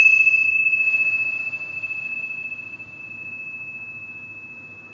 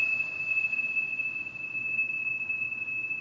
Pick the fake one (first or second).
second